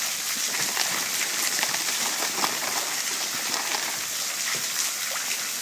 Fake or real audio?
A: fake